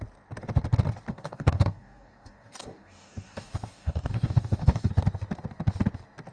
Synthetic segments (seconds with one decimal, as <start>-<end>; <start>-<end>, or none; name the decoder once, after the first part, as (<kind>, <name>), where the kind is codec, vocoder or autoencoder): 1.1-4.9 (codec, DAC)